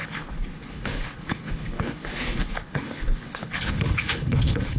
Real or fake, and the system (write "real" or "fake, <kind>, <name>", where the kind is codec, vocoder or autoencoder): fake, codec, HILCodec